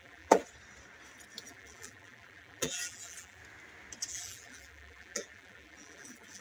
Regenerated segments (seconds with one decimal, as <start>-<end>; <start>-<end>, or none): 0.0-0.4; 1.4-3.4; 4.1-6.4